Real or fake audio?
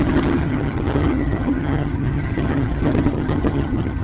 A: fake